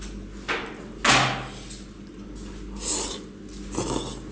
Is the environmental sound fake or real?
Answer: real